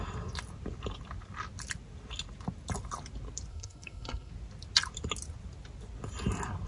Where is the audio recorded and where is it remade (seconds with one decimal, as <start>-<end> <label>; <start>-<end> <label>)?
0.0-3.5 recorded; 3.5-4.3 remade; 4.3-6.7 recorded